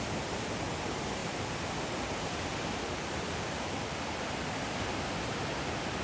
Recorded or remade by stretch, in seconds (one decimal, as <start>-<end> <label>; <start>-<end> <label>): 0.0-1.2 recorded; 1.2-3.2 remade; 3.2-6.0 recorded